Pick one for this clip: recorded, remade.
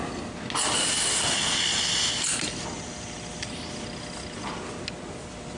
recorded